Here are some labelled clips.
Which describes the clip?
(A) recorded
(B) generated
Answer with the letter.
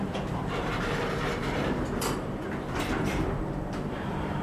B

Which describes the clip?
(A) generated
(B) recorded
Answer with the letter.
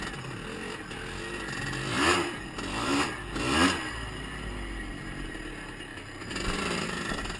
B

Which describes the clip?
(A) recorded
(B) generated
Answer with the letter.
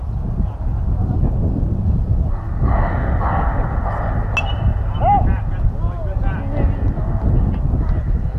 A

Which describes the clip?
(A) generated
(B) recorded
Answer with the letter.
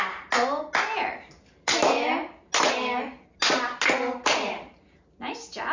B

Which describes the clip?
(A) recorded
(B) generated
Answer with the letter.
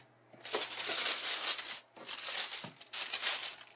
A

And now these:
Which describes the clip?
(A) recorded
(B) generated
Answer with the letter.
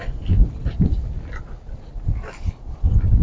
A